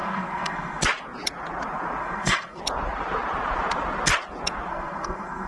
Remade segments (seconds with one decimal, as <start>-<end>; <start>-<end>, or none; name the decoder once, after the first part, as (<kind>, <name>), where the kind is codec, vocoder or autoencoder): 0.0-0.8 (codec, SNAC); 2.0-2.6; 4.7-5.5